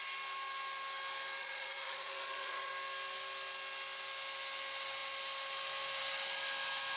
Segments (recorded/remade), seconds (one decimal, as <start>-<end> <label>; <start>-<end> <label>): 0.0-1.4 recorded; 1.4-2.7 remade; 2.7-7.0 recorded